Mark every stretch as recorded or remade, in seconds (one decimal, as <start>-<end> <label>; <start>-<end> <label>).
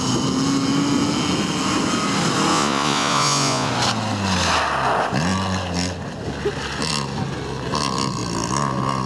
0.0-2.5 recorded; 2.5-3.7 remade; 3.7-9.1 recorded